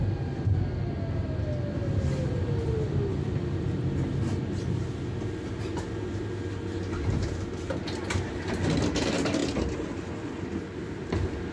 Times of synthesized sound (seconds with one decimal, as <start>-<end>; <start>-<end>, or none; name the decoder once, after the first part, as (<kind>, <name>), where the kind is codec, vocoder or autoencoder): none